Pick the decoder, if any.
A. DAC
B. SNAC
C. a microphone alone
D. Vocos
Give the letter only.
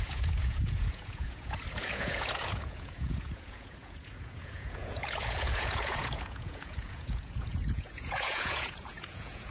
D